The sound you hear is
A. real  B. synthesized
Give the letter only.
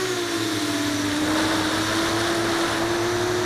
A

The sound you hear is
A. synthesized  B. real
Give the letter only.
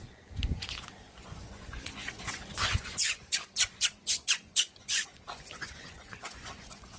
A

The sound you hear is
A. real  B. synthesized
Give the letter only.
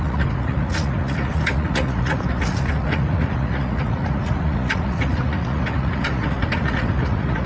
B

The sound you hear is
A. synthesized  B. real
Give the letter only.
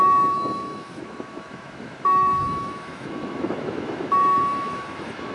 A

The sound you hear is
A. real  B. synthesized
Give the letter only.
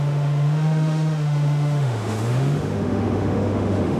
B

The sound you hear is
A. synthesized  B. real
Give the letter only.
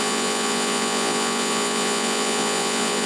A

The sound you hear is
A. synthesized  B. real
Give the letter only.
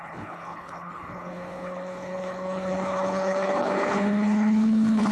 A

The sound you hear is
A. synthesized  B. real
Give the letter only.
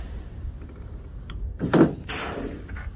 B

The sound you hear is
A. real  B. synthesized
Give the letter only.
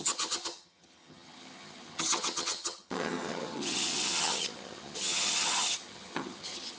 B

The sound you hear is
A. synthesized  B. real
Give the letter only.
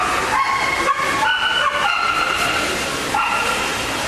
B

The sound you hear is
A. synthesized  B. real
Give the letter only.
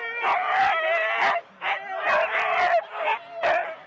B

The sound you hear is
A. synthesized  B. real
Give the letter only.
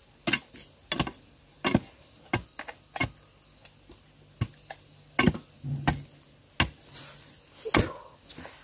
B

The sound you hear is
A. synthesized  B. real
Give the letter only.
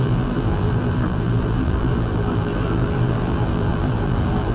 A